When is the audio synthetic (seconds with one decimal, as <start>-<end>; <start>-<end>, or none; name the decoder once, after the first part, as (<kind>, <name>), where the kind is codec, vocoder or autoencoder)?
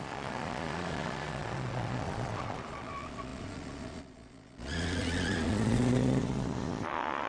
0.0-7.3 (vocoder, Vocos)